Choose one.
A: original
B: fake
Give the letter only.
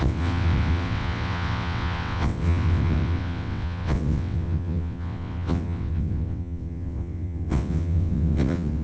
B